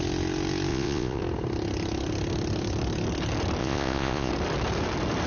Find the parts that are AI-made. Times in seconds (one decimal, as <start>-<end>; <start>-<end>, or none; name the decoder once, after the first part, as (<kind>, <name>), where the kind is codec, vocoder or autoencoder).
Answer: 0.7-1.2 (vocoder, Vocos); 3.6-4.3